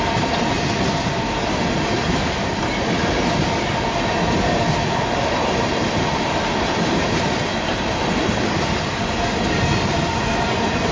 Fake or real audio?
real